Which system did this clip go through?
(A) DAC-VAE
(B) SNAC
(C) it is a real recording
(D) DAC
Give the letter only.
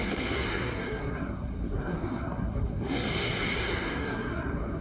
B